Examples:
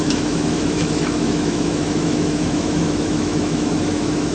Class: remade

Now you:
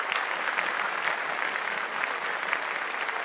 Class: recorded